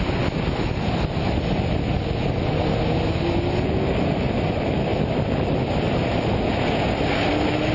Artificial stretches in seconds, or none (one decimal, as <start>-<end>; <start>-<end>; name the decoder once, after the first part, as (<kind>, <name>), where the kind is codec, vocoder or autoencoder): none